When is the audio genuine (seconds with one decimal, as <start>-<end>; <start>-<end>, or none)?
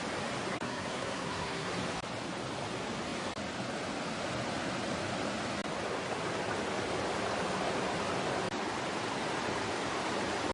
0.0-0.5; 1.7-10.5